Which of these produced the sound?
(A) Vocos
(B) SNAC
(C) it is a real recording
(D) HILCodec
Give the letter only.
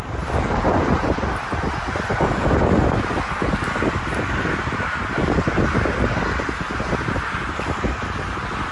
C